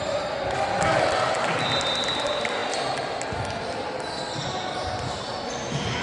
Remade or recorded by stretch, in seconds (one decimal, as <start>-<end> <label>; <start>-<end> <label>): 0.0-6.0 recorded